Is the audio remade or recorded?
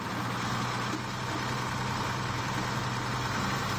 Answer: recorded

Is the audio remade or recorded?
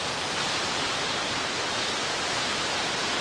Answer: recorded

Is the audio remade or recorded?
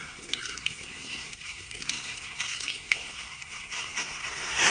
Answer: remade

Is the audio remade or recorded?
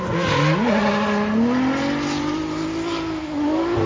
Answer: recorded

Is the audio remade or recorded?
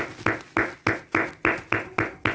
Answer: recorded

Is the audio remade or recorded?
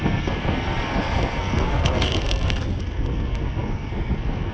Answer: remade